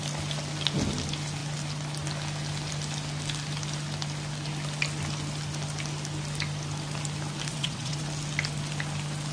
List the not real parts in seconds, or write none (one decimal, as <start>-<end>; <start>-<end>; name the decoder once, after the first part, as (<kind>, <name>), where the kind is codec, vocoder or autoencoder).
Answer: 7.5-8.0 (vocoder, WaveNeXt)